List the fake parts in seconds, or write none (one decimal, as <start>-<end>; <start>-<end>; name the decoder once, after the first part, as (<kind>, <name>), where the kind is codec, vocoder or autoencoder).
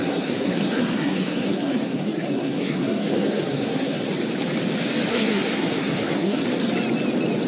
0.0-4.0 (codec, SNAC); 5.1-6.4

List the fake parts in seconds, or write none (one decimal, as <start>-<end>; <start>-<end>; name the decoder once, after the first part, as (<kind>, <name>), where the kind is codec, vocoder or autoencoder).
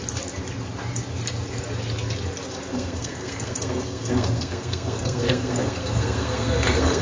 2.7-7.0 (codec, SNAC)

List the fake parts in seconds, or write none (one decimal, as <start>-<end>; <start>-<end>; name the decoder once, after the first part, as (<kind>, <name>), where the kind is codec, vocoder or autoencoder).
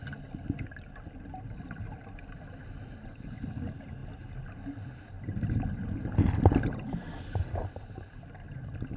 none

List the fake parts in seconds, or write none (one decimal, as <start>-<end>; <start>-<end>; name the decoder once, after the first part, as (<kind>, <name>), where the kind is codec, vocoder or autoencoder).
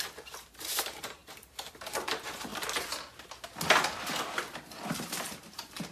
0.0-2.5 (vocoder, BigVGAN v2); 4.9-5.9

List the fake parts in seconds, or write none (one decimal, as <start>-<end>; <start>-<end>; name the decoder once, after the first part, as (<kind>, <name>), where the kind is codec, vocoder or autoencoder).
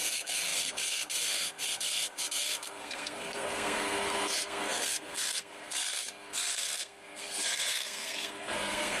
0.0-9.0 (codec, SNAC)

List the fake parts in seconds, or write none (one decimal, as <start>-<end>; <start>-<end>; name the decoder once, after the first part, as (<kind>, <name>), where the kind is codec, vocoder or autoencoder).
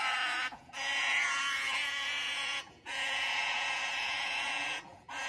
0.0-5.3 (vocoder, Vocos)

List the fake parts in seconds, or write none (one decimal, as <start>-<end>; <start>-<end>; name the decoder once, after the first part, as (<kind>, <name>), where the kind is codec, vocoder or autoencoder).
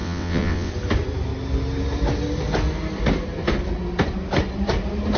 0.0-0.7 (vocoder, WaveNeXt)